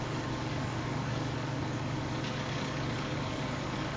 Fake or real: fake